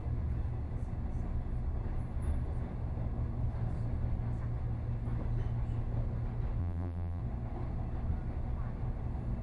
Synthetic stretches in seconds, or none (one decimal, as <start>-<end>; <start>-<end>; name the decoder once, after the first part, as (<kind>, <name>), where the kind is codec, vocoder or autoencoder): 6.6-7.2 (vocoder, BigVGAN v2)